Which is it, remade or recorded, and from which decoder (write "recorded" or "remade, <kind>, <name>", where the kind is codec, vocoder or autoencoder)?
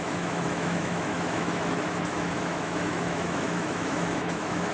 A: remade, autoencoder, DAC-VAE